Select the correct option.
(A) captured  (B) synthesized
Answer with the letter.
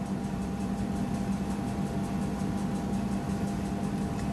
A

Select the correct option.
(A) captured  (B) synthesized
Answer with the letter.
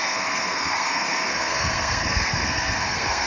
B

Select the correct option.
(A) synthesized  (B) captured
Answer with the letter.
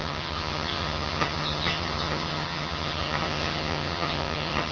A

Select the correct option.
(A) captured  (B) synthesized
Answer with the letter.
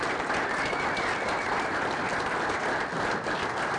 A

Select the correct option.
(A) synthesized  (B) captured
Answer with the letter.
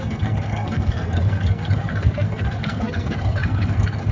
A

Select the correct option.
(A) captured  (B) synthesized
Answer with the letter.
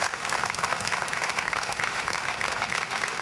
B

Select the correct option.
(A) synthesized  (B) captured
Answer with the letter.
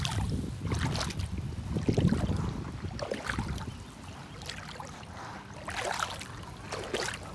B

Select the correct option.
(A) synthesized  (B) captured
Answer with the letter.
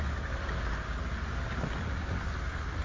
B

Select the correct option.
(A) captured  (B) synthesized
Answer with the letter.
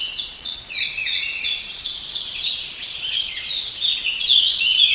B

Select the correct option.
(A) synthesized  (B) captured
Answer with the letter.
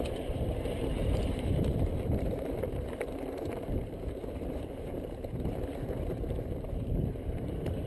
A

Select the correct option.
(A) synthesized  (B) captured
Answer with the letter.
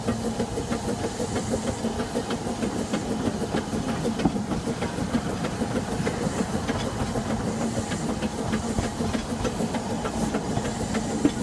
B